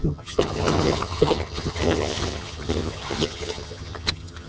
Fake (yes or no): yes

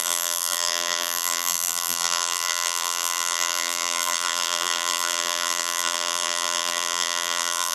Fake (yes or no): yes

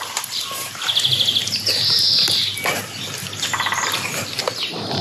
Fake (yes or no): no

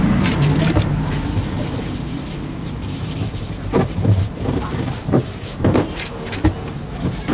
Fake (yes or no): yes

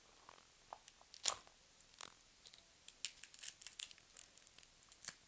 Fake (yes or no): no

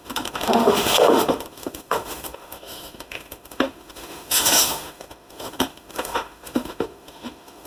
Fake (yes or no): yes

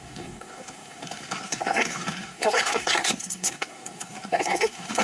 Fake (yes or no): yes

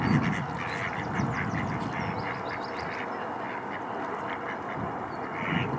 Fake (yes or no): no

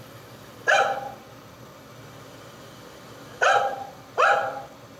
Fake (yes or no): yes